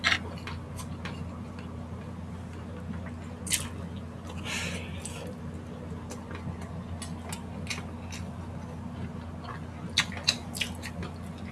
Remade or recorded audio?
recorded